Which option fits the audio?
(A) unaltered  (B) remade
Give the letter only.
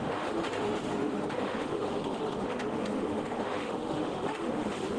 B